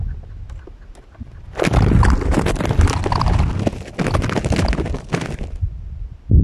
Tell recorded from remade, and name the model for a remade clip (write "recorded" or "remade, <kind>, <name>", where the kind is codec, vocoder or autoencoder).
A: recorded